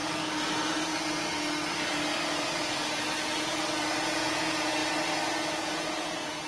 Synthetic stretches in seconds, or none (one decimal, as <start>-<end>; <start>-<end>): 3.9-4.8; 5.6-6.5